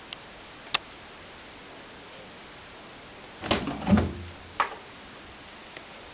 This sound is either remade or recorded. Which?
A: recorded